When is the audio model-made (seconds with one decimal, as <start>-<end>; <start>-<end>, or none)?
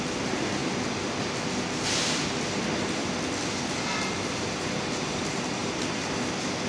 none